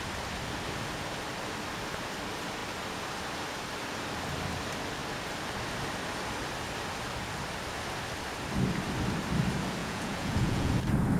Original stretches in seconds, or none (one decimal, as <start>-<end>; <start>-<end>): 0.0-9.8; 10.7-11.2

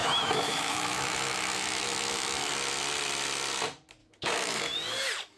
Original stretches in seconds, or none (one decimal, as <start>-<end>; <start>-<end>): 2.5-4.0; 4.6-5.4

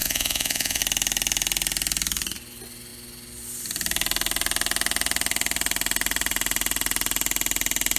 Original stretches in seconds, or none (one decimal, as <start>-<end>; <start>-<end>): 0.8-8.0

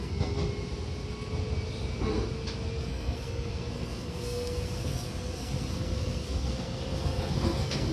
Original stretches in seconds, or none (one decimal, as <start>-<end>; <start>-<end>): 0.4-2.8

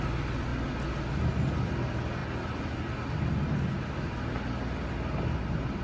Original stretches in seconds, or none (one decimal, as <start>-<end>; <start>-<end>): 0.0-5.8

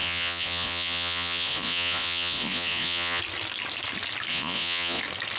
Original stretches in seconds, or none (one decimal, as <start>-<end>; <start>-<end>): 3.2-4.3; 5.0-5.4

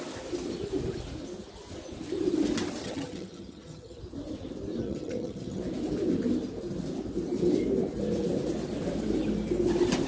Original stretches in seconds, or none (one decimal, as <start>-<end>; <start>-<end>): 0.0-2.8; 4.0-4.8; 5.6-10.1

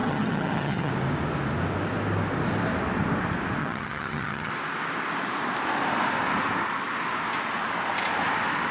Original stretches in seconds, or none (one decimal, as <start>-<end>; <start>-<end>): 0.9-3.6; 4.5-8.7